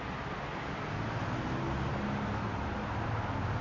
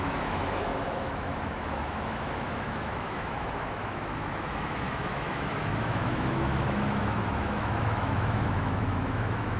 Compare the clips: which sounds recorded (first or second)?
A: first